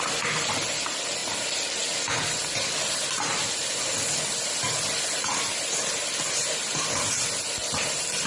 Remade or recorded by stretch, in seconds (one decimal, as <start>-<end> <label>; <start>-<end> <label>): 0.0-8.3 recorded